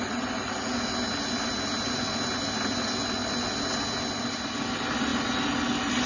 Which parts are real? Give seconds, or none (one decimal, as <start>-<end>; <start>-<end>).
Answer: 0.0-6.1